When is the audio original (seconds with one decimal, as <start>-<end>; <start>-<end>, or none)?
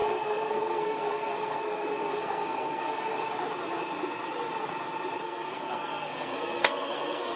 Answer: 3.1-5.2